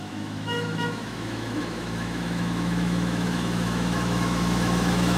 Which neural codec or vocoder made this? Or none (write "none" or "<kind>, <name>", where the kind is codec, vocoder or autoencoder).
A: autoencoder, DAC-VAE